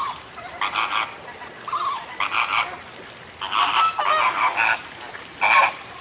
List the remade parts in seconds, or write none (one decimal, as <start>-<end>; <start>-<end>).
none